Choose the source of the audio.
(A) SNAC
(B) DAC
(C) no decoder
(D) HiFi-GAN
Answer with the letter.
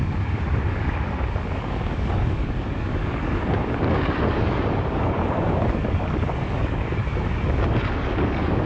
B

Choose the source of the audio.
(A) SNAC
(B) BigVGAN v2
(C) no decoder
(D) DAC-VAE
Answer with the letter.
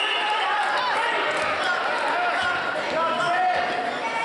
C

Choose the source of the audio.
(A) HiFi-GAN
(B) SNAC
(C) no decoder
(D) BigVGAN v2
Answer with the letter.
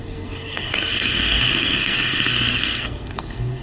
B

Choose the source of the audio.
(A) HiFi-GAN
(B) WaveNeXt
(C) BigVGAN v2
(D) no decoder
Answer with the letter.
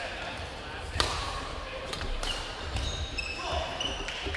C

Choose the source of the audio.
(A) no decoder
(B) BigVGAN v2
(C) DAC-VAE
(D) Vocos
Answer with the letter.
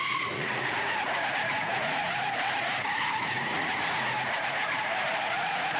D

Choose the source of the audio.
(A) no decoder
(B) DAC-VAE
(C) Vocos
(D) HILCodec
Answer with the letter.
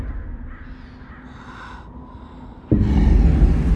A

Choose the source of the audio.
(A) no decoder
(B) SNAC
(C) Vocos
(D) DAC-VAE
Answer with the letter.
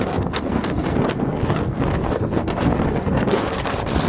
B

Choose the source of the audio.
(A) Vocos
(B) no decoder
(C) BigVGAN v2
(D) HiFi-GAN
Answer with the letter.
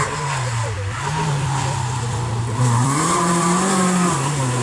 C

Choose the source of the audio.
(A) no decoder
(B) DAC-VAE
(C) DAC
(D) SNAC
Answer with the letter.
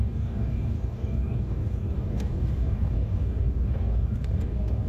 C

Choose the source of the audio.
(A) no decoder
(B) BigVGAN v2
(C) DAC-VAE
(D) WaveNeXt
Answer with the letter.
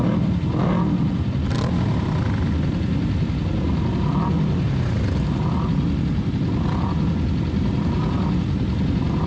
A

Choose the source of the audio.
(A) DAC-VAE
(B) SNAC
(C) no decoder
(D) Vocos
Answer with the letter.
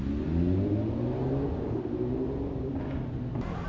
C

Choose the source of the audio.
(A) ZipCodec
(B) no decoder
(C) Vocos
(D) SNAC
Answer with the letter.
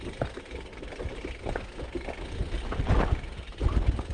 B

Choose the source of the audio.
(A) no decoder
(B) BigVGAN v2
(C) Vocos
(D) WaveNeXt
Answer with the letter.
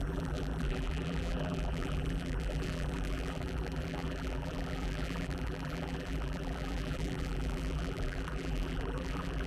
B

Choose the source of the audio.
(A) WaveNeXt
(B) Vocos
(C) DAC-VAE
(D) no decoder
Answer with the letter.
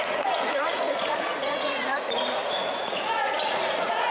B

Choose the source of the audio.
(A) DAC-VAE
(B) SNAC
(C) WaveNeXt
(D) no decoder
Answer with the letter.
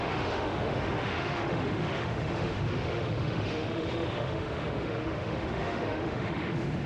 A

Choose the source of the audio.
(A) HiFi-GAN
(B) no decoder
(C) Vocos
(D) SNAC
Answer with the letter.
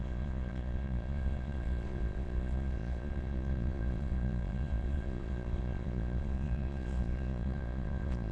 C